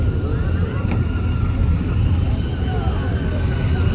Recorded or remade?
recorded